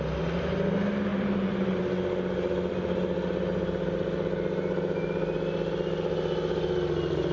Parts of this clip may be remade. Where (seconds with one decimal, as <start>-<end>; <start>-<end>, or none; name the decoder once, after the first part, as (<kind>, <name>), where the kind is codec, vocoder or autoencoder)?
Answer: 1.1-1.8 (vocoder, BigVGAN v2)